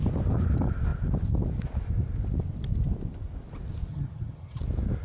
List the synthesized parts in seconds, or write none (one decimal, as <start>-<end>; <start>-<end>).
3.9-4.6

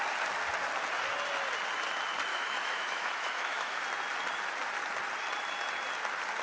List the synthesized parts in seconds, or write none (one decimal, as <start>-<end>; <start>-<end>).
2.3-3.8

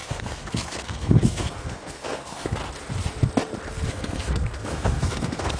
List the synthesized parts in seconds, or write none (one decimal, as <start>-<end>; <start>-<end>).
0.0-2.6; 3.9-5.6

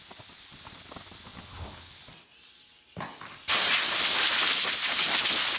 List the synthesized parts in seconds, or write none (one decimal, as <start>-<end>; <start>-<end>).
0.0-5.6

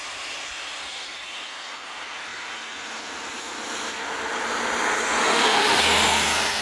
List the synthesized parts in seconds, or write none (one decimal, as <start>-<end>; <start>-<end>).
5.2-5.8

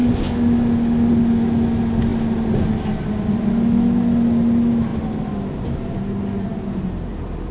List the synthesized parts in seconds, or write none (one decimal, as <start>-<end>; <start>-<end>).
none

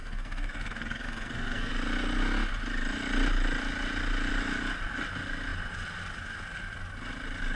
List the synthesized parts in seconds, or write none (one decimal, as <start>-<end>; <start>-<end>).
0.0-1.7